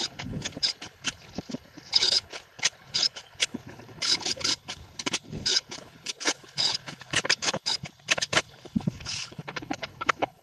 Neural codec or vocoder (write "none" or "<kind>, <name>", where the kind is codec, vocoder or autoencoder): codec, HILCodec